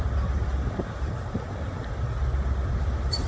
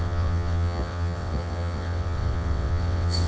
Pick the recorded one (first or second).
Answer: first